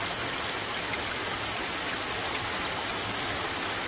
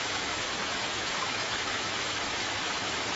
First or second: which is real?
first